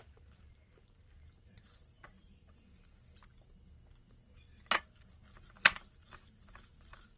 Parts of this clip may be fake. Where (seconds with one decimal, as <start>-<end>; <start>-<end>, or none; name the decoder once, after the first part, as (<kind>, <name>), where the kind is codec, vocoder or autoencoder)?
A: 0.0-3.2 (vocoder, BigVGAN v2); 4.8-7.2